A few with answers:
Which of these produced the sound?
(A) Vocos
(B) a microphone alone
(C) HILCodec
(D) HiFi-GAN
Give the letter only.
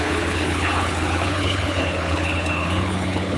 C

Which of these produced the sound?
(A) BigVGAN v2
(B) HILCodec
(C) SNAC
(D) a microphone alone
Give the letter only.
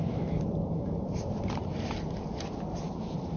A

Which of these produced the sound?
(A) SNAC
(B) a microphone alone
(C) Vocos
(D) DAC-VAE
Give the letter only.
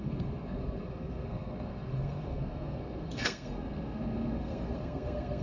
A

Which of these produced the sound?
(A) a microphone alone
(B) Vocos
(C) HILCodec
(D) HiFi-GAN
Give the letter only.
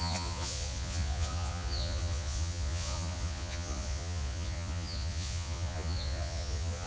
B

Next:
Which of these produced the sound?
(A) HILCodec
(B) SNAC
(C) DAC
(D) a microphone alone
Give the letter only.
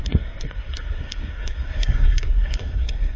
B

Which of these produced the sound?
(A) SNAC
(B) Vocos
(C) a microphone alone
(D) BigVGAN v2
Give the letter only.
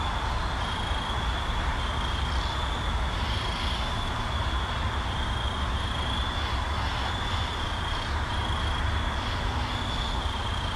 C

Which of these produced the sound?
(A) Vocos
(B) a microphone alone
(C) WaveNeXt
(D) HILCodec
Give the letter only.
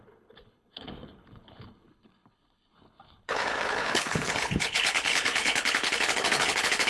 D